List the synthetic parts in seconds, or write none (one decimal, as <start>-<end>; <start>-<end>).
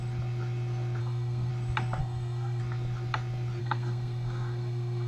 1.0-1.5; 2.0-2.6; 3.6-5.1